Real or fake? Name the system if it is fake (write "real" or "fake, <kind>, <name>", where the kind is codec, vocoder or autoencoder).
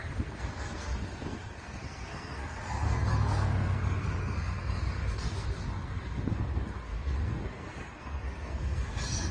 fake, codec, SNAC